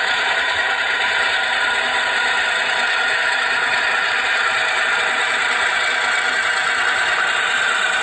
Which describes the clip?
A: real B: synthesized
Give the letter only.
B